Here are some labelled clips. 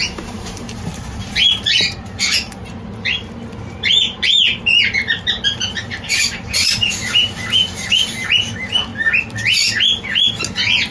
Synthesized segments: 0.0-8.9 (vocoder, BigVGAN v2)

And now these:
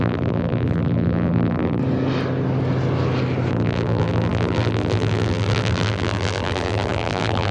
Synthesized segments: 0.0-1.8 (vocoder, BigVGAN v2); 3.5-7.5

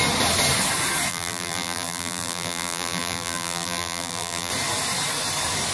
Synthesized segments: 1.1-4.5 (vocoder, BigVGAN v2)

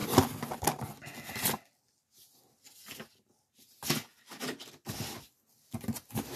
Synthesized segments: none